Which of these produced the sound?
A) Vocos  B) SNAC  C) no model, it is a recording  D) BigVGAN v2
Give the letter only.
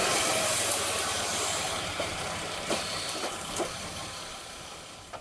D